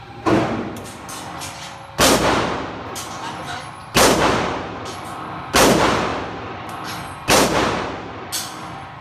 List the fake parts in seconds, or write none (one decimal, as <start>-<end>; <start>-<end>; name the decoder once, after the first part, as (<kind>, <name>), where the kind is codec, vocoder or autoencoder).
none